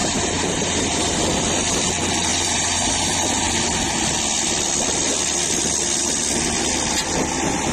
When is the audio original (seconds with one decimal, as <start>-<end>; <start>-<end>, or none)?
1.2-7.7